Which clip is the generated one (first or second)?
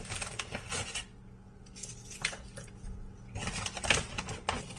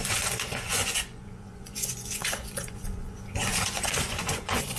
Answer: second